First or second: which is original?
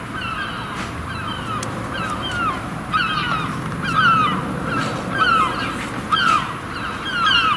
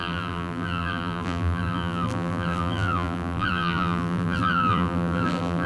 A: first